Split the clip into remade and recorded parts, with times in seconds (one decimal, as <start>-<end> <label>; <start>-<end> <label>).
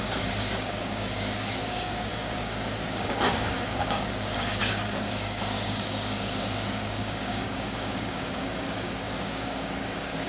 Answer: 0.0-10.3 remade